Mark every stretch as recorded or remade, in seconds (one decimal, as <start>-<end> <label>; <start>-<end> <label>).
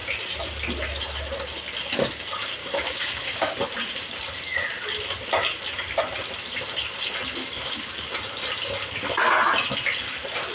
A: 0.0-2.6 recorded; 2.6-3.6 remade; 3.6-7.4 recorded; 7.4-8.1 remade; 8.1-10.5 recorded